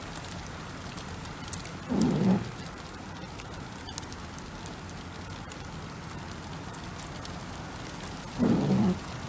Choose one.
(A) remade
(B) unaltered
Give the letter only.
B